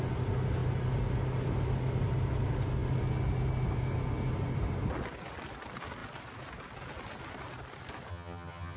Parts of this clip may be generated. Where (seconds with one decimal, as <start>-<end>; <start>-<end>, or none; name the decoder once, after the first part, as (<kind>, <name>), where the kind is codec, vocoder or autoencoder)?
8.1-8.8 (vocoder, HiFi-GAN)